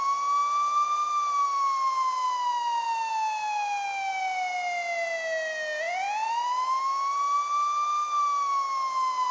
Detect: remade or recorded recorded